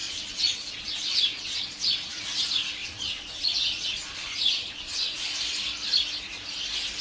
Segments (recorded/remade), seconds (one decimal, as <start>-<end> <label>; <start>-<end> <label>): 0.0-2.2 remade; 2.2-2.8 recorded; 2.8-5.3 remade; 5.3-7.0 recorded